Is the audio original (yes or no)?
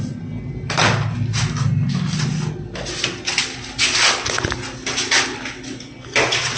yes